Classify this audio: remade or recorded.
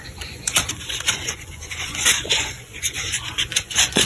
remade